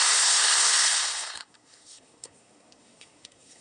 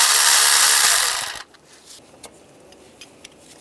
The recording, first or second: second